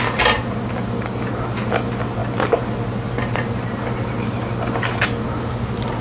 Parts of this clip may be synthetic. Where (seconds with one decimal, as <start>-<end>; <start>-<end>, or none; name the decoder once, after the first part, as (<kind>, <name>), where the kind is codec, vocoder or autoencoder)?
none